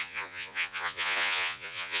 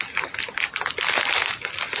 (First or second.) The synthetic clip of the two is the first